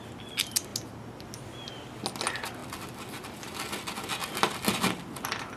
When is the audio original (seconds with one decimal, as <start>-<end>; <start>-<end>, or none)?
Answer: 0.0-5.6